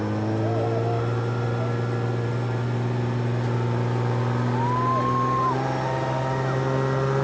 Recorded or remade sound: recorded